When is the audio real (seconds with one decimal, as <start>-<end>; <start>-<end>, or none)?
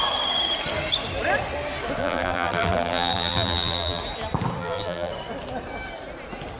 0.0-2.0; 4.0-4.6; 5.1-6.6